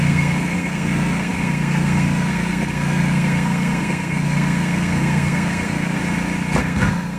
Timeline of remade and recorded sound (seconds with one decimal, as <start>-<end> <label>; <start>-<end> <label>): 0.0-6.0 remade; 6.0-6.6 recorded; 6.6-7.2 remade